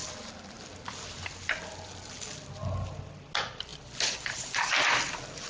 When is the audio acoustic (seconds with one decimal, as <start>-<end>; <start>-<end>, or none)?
0.0-5.5